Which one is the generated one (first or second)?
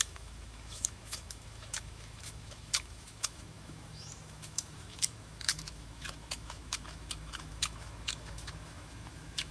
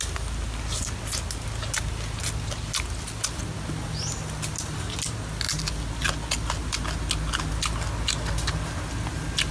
first